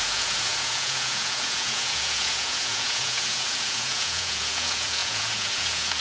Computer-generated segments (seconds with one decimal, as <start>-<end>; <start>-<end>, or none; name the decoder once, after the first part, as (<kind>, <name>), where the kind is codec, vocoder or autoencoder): 0.0-6.0 (vocoder, Vocos)